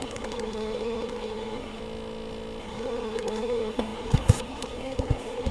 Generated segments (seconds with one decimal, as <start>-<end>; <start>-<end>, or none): 0.0-1.8; 2.6-5.5